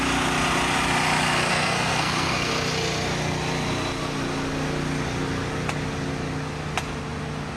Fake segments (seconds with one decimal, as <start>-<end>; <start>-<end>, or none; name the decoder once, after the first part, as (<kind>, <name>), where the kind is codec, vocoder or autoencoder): 1.5-2.5 (codec, SNAC)